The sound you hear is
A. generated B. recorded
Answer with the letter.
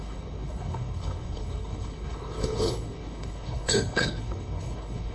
A